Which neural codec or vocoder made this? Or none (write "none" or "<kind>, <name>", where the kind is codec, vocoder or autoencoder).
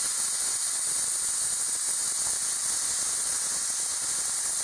none